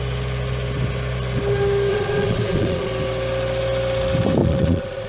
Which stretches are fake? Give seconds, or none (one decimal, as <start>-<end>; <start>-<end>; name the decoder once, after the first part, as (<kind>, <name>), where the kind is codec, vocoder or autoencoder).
1.9-2.9 (vocoder, Vocos); 4.4-5.1